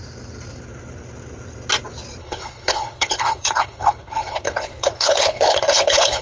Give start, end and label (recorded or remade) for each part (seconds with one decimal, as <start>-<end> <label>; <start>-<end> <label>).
0.0-2.2 recorded; 2.2-6.2 remade